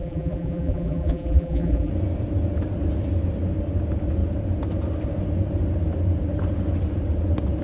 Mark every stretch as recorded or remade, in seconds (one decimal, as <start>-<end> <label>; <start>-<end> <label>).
0.0-1.9 remade; 1.9-7.6 recorded